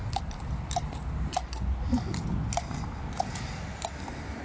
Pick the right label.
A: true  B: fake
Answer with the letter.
A